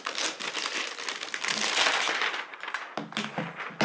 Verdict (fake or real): real